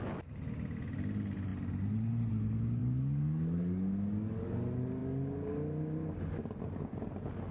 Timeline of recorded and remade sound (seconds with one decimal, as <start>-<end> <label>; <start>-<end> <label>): 0.0-2.8 recorded; 2.8-4.4 remade; 4.4-7.5 recorded

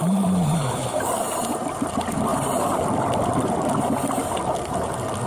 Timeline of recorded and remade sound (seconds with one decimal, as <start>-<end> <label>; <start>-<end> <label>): 0.0-0.6 recorded; 0.6-1.1 remade; 1.1-5.3 recorded